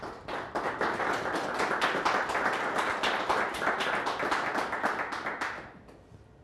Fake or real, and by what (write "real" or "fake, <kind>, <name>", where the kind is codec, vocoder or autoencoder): real